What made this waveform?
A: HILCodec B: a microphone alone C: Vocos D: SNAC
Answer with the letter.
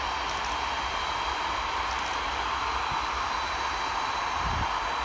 B